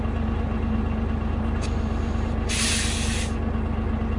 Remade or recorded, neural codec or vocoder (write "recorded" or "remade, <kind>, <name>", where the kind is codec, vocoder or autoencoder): recorded